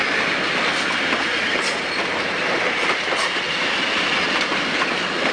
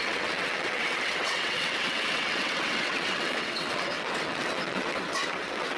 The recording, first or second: first